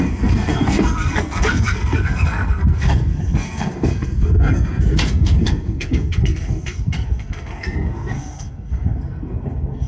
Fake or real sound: fake